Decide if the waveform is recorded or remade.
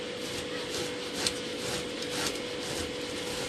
recorded